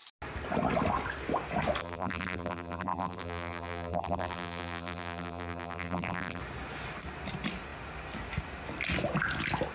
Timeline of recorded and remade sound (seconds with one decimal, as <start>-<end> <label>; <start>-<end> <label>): 0.0-1.8 recorded; 1.8-6.4 remade; 6.4-9.7 recorded

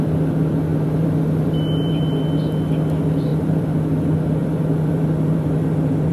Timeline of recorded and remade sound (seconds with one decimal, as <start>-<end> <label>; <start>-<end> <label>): 0.0-0.7 recorded; 0.7-2.0 remade; 2.0-3.3 recorded; 3.3-4.0 remade; 4.0-4.4 recorded; 4.4-6.1 remade

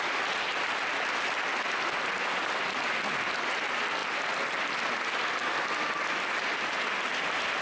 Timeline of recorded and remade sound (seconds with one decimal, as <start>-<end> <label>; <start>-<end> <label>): 0.0-7.6 recorded